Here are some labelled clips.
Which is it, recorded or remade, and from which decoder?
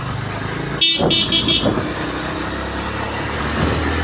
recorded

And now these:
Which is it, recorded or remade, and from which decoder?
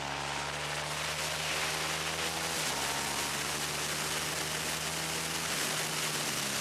recorded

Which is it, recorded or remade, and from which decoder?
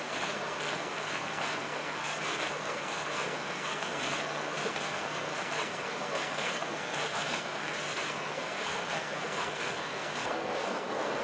remade, codec, SNAC